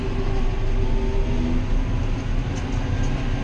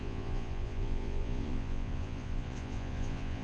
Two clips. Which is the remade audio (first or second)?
second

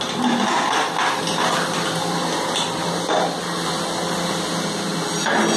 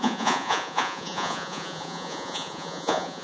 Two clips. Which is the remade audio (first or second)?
second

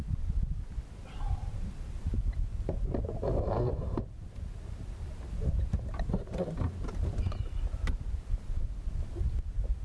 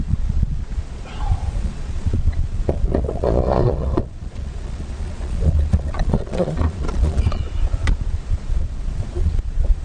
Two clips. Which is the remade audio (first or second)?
second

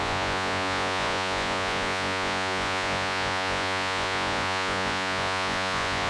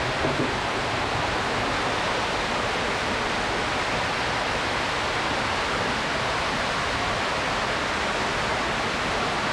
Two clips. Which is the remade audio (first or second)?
first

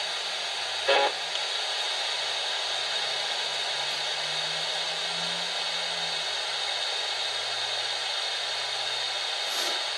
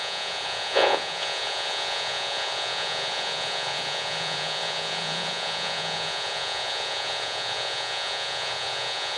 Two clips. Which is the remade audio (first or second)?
second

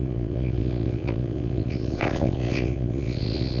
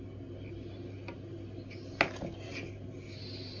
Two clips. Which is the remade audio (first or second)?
first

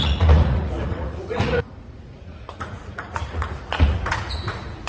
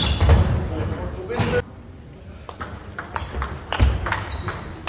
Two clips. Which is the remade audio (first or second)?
first